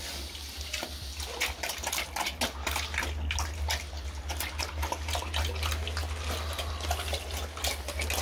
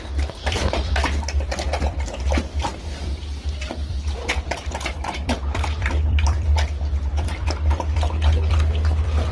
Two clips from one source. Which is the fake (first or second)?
second